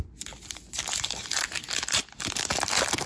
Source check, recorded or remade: recorded